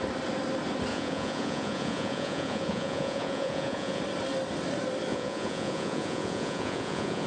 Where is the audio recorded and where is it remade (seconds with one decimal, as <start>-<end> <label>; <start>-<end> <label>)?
0.0-0.9 recorded; 0.9-4.0 remade; 4.0-5.1 recorded; 5.1-7.3 remade

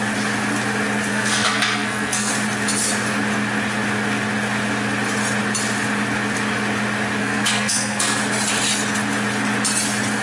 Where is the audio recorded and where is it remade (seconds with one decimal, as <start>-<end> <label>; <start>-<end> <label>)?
0.0-1.1 recorded; 1.1-2.3 remade; 2.3-7.2 recorded; 7.2-8.2 remade; 8.2-10.2 recorded

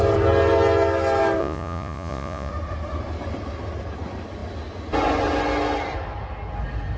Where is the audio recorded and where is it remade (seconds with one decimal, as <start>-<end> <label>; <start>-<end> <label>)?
0.0-1.4 recorded; 1.4-2.5 remade; 2.5-7.0 recorded

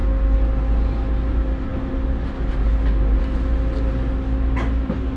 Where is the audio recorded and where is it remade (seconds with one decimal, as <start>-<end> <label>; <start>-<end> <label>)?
0.0-5.2 recorded

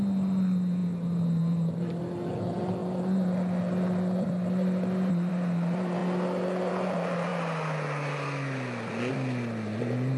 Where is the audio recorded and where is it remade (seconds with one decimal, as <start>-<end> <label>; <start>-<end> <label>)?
0.0-10.2 recorded

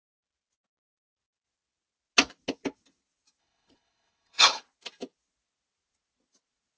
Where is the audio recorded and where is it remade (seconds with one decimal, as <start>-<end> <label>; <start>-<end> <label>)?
0.0-3.4 recorded; 3.4-4.6 remade; 4.6-6.8 recorded

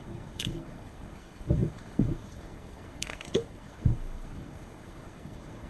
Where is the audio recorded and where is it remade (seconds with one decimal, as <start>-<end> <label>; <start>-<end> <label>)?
0.0-5.7 remade